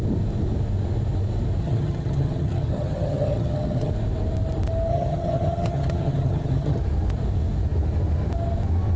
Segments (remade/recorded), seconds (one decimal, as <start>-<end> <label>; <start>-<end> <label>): 0.0-1.6 recorded; 1.6-3.9 remade; 3.9-4.9 recorded; 4.9-6.8 remade; 6.8-9.0 recorded